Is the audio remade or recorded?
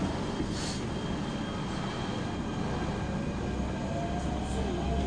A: recorded